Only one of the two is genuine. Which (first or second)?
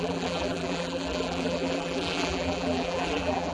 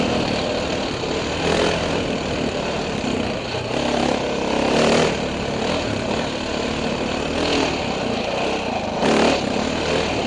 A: second